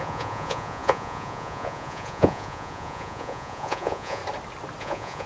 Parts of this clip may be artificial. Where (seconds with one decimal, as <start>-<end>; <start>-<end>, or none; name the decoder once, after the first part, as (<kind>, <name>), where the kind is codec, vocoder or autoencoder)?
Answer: 0.0-4.2 (vocoder, Vocos); 4.8-5.3